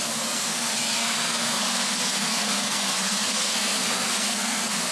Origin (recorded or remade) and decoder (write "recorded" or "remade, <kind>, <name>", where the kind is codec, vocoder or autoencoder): remade, codec, SNAC